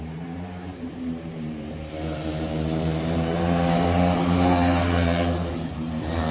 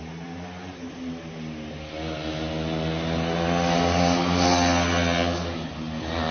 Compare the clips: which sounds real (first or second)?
second